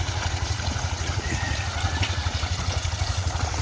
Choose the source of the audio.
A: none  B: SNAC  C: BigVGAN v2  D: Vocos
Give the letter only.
D